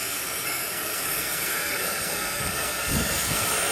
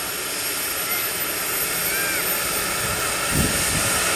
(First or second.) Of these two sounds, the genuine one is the second